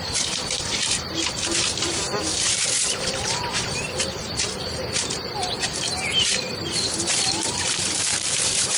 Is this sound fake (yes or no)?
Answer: yes